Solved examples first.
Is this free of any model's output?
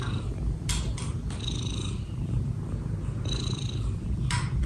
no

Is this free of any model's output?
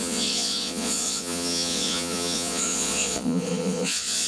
no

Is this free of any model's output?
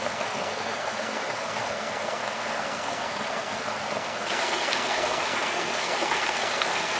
no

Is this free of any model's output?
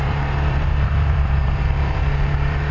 no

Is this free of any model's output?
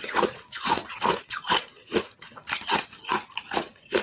no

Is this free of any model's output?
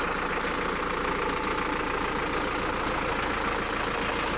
yes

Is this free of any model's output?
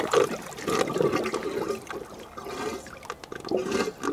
yes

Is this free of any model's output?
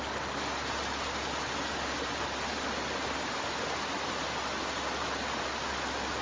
yes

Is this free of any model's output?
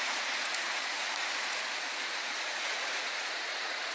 no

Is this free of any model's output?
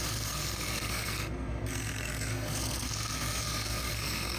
no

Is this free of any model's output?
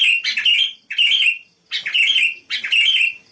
yes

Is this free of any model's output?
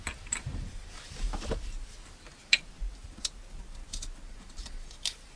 yes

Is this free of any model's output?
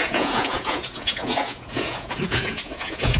no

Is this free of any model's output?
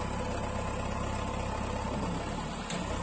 yes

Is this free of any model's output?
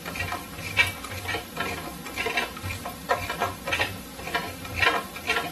yes